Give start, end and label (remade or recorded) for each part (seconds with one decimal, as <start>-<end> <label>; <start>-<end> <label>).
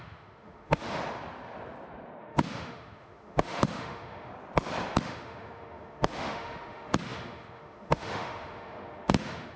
0.0-1.0 remade; 1.0-2.2 recorded; 2.2-4.3 remade; 4.3-5.0 recorded; 5.0-9.6 remade